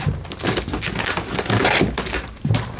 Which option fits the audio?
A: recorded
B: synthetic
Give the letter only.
A